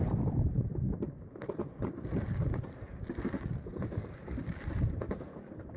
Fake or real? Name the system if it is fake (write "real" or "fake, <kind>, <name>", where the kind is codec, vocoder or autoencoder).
fake, vocoder, BigVGAN v2